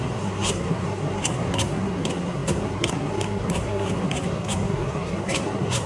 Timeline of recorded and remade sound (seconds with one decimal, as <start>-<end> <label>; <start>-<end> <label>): 0.0-5.9 remade